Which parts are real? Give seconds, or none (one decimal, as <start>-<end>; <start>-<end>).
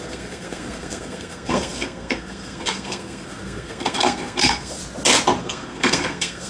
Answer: 4.8-5.4